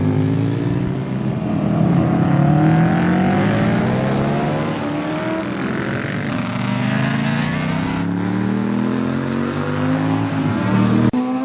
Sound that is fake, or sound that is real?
real